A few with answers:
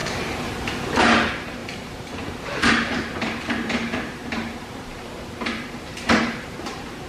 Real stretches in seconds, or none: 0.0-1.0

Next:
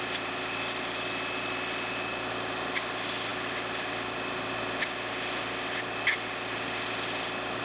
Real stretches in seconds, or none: 0.0-7.6

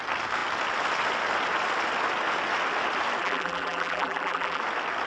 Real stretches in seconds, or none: 0.0-3.2; 4.6-5.1

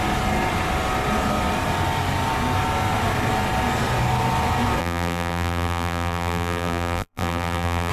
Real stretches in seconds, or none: 0.0-4.8

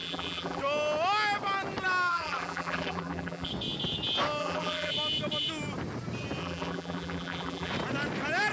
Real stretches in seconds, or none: 0.6-2.1; 3.5-4.4; 4.9-6.4; 7.7-8.5

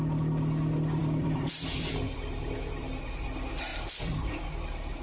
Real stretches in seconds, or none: 0.0-1.0; 3.0-3.7; 4.5-5.0

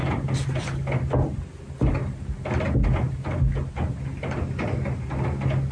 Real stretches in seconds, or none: 0.0-5.7